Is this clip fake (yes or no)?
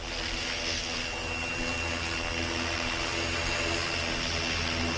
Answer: no